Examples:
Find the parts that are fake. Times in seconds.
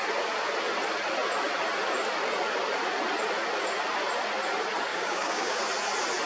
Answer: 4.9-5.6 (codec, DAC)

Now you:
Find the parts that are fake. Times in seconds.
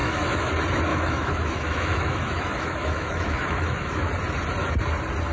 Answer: 0.0-0.5 (autoencoder, DAC-VAE); 0.9-4.1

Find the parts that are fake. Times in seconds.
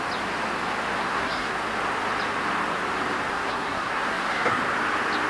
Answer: 1.0-1.5 (codec, SNAC); 3.3-4.6